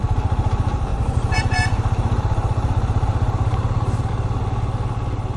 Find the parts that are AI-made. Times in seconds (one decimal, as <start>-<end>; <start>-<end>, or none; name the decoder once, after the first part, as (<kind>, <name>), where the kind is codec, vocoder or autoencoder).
0.9-4.1 (vocoder, BigVGAN v2)